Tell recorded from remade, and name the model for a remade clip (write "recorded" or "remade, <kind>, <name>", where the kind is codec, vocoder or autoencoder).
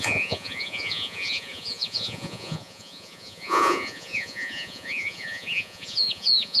remade, vocoder, Vocos